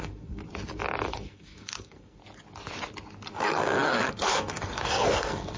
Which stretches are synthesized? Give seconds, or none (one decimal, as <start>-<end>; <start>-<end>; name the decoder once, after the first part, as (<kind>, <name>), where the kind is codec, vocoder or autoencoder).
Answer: 0.0-0.4 (codec, SNAC); 1.1-2.2; 3.3-5.6